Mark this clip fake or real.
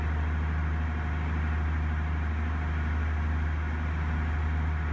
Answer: real